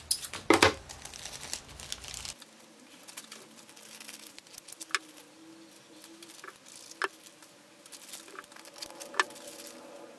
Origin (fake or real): real